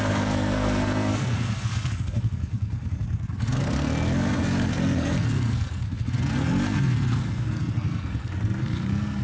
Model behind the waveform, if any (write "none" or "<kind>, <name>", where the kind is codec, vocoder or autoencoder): codec, SNAC